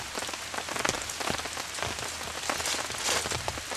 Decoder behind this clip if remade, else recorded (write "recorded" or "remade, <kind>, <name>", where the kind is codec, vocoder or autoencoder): recorded